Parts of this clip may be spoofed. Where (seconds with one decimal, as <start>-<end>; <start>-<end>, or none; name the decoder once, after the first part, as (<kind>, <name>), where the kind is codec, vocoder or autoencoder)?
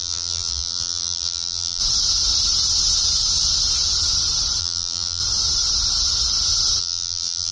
0.0-1.8 (vocoder, BigVGAN v2); 4.6-5.2; 6.8-7.5